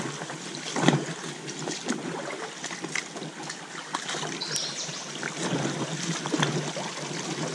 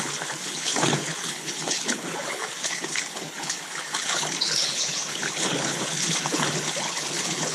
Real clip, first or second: first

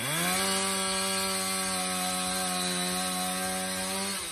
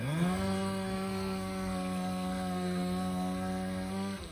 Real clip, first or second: first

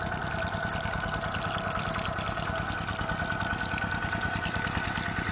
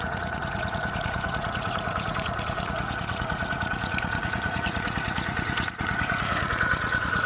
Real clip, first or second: first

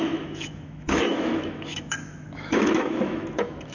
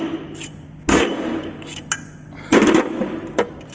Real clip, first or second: second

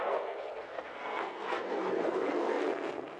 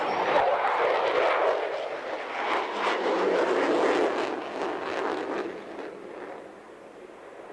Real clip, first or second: second